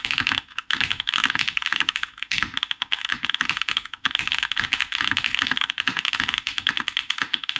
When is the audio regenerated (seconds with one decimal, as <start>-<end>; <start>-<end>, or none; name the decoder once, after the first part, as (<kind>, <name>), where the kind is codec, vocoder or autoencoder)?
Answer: 0.0-7.6 (autoencoder, DAC-VAE)